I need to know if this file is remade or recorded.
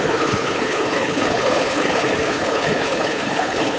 remade